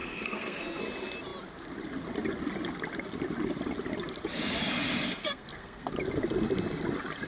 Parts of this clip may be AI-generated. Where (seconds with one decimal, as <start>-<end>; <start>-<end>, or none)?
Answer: 0.0-0.8; 5.2-5.9